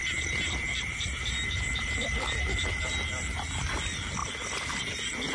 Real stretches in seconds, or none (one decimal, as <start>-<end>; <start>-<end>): 2.8-4.2; 4.8-5.3